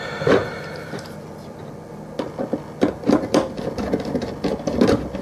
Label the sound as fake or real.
real